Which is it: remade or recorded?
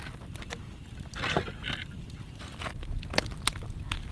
recorded